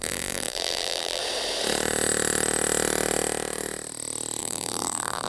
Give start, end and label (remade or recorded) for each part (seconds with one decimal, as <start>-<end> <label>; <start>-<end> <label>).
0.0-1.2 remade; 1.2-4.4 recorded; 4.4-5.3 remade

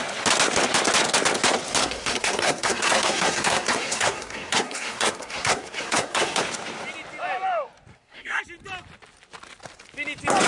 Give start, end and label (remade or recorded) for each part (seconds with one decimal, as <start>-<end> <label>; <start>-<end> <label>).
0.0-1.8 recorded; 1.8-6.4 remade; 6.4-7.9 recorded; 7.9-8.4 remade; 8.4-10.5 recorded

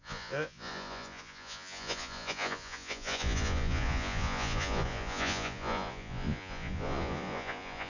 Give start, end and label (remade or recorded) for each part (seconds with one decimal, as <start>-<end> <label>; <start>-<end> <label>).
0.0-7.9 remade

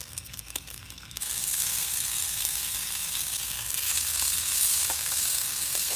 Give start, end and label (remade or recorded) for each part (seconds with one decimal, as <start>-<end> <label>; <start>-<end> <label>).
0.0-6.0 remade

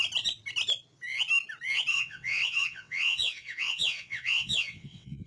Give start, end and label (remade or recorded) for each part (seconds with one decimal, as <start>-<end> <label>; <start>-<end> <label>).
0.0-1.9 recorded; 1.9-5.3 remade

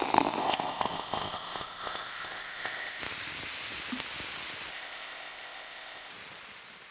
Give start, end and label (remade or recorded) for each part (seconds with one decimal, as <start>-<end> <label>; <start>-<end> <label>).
0.0-0.4 recorded; 0.4-3.0 remade; 3.0-4.7 recorded; 4.7-6.1 remade; 6.1-6.9 recorded